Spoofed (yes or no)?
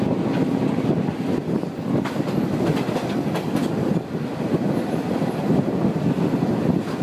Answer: no